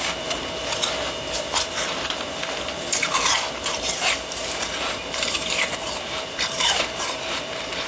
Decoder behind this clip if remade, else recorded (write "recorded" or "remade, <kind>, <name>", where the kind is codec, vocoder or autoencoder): remade, vocoder, BigVGAN v2